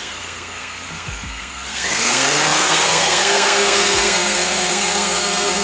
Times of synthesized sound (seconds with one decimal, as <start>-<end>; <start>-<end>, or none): 0.0-5.6